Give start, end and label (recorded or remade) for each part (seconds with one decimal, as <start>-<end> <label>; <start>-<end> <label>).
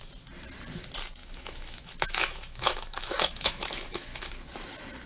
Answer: 0.0-1.2 recorded; 1.2-4.3 remade; 4.3-5.1 recorded